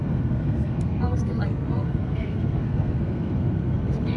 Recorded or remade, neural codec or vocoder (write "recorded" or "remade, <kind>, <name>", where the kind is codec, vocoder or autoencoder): remade, codec, SNAC